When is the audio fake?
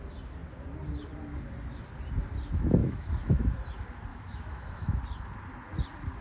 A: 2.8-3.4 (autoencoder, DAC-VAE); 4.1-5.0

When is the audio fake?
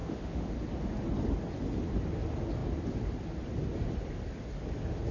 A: 0.0-0.5 (autoencoder, DAC-VAE)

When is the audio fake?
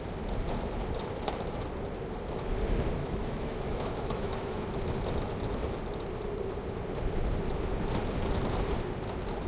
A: 3.0-4.7 (autoencoder, DAC-VAE)